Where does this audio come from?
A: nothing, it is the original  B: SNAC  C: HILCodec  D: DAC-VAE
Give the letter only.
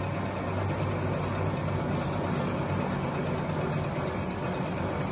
A